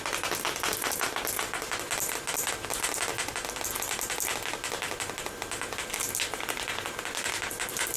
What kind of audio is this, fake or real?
real